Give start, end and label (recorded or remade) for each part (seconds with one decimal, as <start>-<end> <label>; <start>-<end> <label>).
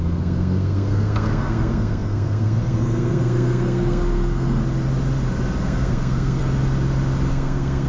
0.0-4.6 remade; 4.6-5.6 recorded; 5.6-6.4 remade; 6.4-7.3 recorded; 7.3-7.9 remade